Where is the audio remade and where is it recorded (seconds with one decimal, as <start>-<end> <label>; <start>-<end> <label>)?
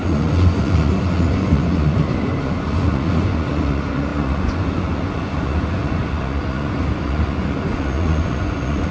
0.0-8.9 remade